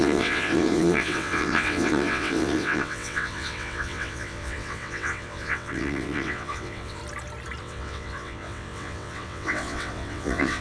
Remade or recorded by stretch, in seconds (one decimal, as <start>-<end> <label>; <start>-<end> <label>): 0.0-7.0 remade; 7.0-7.6 recorded; 7.6-10.6 remade